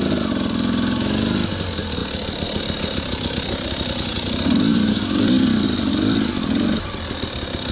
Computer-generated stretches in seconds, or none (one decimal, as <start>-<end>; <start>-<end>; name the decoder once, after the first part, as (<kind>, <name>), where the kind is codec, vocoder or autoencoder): none